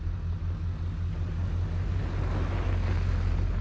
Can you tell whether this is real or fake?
real